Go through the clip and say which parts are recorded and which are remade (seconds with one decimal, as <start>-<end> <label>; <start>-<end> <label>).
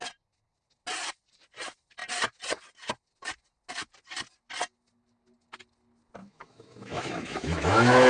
0.0-6.2 recorded; 6.2-8.1 remade